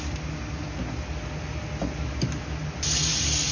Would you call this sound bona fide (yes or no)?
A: yes